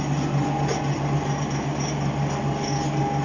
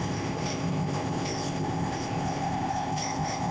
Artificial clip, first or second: second